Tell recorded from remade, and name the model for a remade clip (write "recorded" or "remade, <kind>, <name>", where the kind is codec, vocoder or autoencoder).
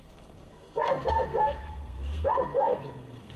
remade, codec, SNAC